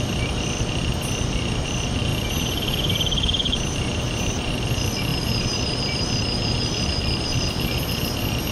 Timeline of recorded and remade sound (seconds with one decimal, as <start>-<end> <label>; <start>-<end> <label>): 0.0-2.1 recorded; 2.1-4.5 remade; 4.5-5.1 recorded; 5.1-5.8 remade; 5.8-8.5 recorded